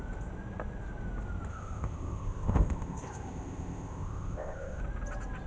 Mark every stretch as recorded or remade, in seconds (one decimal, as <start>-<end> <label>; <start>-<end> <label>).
0.0-1.5 recorded; 1.5-4.8 remade; 4.8-5.5 recorded

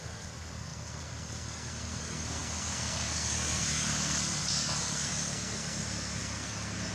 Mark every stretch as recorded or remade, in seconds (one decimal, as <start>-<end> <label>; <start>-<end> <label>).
0.0-6.9 remade

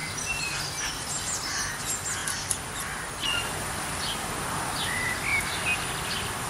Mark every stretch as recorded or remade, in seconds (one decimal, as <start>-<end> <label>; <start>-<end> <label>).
0.0-6.5 recorded

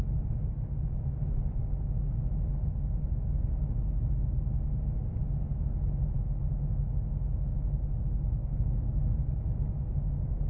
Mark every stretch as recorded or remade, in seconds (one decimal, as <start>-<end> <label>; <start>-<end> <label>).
0.0-8.4 recorded; 8.4-9.3 remade; 9.3-10.5 recorded

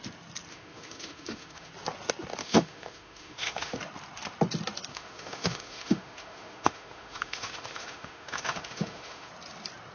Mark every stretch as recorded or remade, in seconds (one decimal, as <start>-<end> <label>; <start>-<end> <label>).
0.0-0.5 recorded; 0.5-1.7 remade; 1.7-2.4 recorded; 2.4-3.8 remade; 3.8-4.9 recorded; 4.9-9.3 remade; 9.3-9.9 recorded